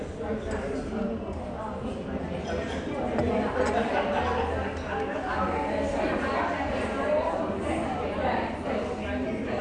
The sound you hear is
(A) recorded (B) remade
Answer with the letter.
A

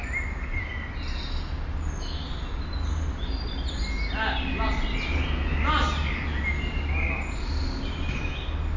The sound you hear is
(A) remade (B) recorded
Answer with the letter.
B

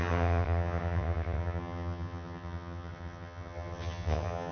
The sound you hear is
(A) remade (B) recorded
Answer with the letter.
A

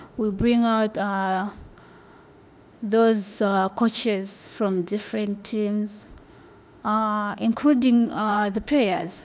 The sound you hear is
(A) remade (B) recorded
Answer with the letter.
A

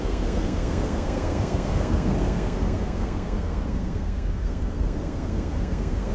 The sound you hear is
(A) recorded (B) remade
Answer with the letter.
B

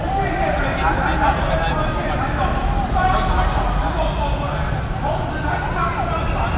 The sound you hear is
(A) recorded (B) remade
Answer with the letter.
A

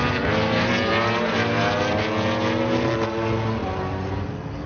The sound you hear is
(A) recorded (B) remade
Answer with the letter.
A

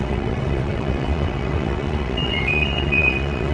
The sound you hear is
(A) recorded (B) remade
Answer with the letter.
B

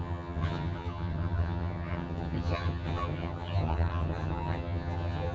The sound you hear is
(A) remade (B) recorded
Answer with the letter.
A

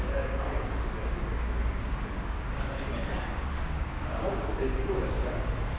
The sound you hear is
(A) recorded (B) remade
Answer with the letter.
B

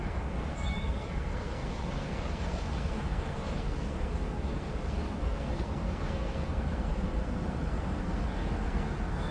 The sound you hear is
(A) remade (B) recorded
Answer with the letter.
A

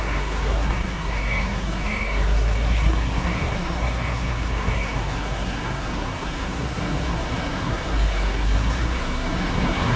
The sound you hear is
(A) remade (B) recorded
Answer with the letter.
A